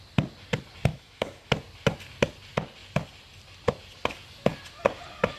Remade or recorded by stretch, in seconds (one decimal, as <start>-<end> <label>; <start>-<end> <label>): 0.0-0.9 recorded; 0.9-1.5 remade; 1.5-5.4 recorded